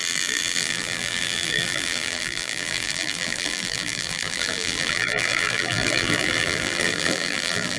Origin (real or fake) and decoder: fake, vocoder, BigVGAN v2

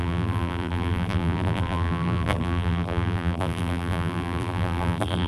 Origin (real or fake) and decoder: fake, vocoder, BigVGAN v2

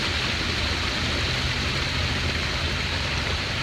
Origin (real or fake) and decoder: real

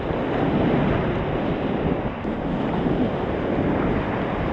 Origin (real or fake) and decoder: real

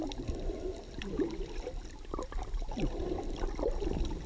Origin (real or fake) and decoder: fake, vocoder, BigVGAN v2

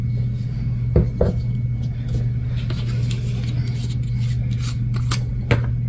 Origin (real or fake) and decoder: real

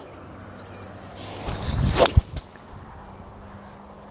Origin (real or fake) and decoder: real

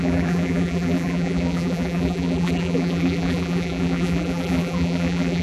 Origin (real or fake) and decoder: fake, vocoder, BigVGAN v2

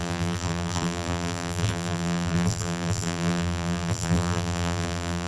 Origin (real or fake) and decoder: fake, vocoder, BigVGAN v2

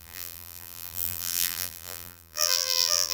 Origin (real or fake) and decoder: fake, vocoder, BigVGAN v2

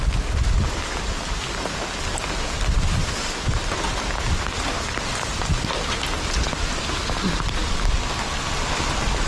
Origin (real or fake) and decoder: real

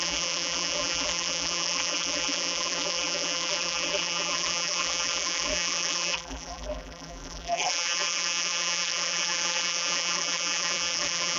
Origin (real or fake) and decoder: fake, vocoder, BigVGAN v2